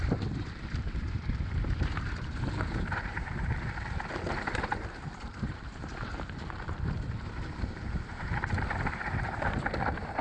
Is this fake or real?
fake